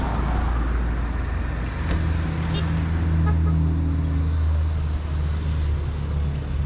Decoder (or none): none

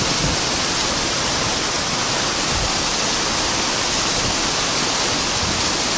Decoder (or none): none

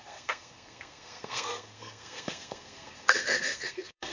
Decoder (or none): codec, SNAC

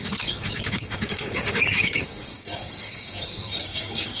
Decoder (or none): codec, DAC